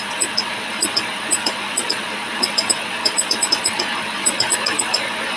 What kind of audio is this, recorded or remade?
remade